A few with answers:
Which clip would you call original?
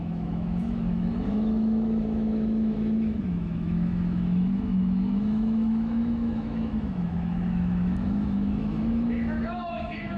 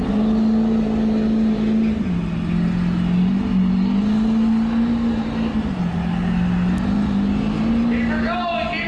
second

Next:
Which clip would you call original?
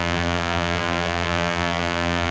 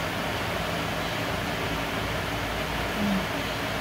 second